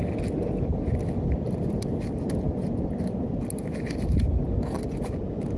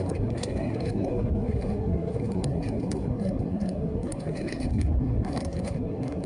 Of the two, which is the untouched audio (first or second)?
first